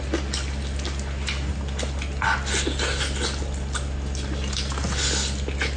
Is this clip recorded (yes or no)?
yes